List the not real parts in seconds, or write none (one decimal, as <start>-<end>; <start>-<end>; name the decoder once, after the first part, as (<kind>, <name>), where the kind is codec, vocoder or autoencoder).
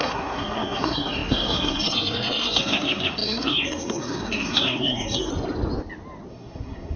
0.0-5.3 (codec, SNAC); 6.3-7.0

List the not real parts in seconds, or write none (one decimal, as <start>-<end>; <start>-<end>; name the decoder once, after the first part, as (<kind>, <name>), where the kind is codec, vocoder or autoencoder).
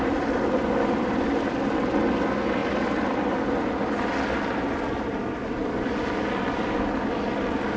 none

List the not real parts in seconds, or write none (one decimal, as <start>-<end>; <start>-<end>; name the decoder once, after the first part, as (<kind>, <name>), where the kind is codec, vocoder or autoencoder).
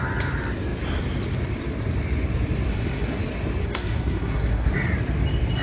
2.7-3.2 (codec, SNAC); 3.6-4.7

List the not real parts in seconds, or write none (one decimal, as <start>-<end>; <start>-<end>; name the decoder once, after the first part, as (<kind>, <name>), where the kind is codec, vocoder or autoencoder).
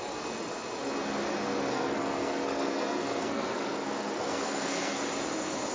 1.7-5.0 (codec, SNAC)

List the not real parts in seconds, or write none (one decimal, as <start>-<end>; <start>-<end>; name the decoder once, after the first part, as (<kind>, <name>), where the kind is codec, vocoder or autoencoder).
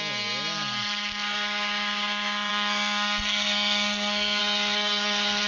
2.5-4.4 (codec, SNAC)